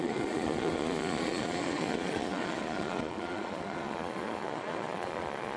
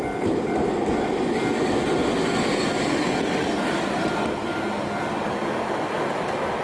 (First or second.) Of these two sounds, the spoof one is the first